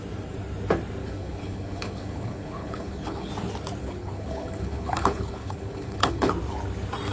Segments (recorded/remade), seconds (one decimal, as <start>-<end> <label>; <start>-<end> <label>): 0.0-1.0 recorded; 1.0-3.3 remade; 3.3-3.8 recorded; 3.8-6.3 remade; 6.3-7.1 recorded

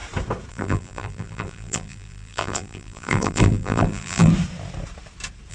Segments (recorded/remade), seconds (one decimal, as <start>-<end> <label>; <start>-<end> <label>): 0.0-0.5 recorded; 0.5-4.3 remade; 4.3-5.5 recorded

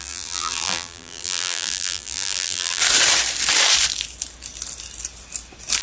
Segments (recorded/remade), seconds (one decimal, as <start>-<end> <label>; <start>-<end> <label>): 0.0-2.8 remade; 2.8-5.8 recorded

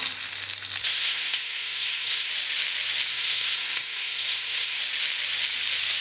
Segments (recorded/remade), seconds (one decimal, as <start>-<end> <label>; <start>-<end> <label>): 0.0-0.8 recorded; 0.8-2.3 remade; 2.3-3.1 recorded; 3.1-4.8 remade; 4.8-6.0 recorded

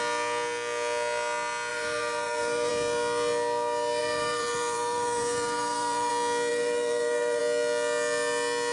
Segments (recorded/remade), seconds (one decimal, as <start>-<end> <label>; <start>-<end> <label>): 0.0-1.7 recorded; 1.7-2.7 remade; 2.7-4.0 recorded; 4.0-6.1 remade; 6.1-6.5 recorded; 6.5-7.4 remade; 7.4-8.7 recorded

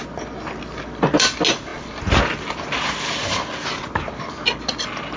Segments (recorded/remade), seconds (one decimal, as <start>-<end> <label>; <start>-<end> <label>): 0.0-5.2 recorded

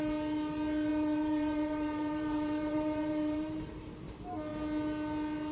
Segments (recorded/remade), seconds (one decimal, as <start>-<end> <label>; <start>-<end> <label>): 0.0-0.9 recorded; 0.9-3.9 remade; 3.9-5.5 recorded

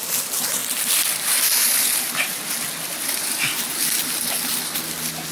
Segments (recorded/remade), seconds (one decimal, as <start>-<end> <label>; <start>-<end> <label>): 0.0-5.3 recorded